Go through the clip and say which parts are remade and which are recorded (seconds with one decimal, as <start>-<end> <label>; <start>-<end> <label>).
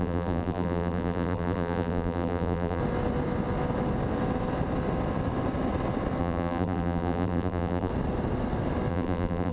0.0-2.8 remade; 2.8-6.2 recorded; 6.2-7.9 remade; 7.9-8.9 recorded; 8.9-9.5 remade